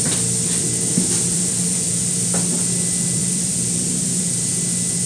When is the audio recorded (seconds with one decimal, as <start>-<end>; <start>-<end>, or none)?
0.0-0.6; 2.0-3.2; 4.2-5.0